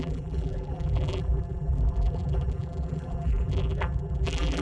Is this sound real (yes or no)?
no